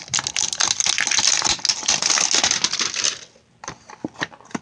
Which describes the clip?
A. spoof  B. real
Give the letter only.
B